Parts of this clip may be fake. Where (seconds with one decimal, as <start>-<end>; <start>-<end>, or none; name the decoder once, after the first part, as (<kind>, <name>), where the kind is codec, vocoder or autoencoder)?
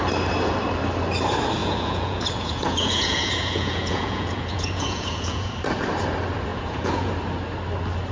1.6-5.5 (vocoder, Vocos); 6.5-7.1